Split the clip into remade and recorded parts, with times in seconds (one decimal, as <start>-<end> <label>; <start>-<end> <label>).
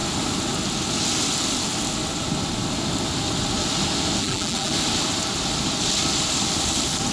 0.0-4.2 recorded; 4.2-4.7 remade; 4.7-7.1 recorded